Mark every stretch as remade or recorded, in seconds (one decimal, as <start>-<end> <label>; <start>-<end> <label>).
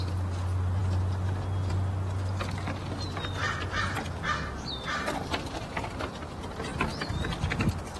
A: 0.0-3.4 recorded; 3.4-6.2 remade; 6.2-8.0 recorded